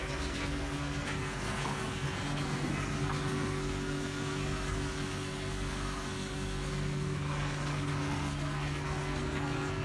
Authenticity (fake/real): fake